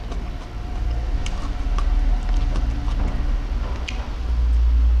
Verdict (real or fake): real